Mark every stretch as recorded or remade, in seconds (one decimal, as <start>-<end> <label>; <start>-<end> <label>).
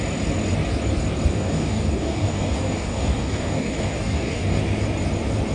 0.0-1.3 recorded; 1.3-4.6 remade; 4.6-5.5 recorded